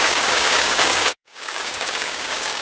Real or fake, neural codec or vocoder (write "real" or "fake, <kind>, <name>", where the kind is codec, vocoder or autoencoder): fake, codec, DAC